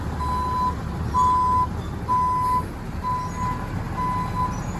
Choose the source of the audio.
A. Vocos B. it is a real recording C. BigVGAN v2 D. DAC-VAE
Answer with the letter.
B